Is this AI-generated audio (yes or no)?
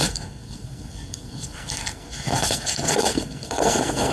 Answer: yes